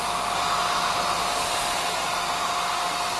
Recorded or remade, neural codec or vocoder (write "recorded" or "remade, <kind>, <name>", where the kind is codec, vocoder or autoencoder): recorded